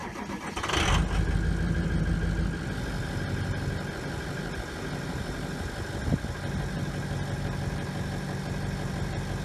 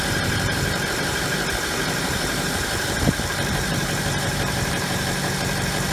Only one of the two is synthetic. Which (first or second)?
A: second